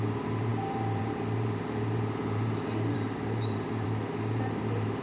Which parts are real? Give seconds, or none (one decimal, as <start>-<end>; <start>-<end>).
none